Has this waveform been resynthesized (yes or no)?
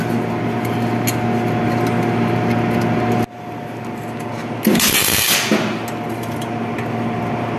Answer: no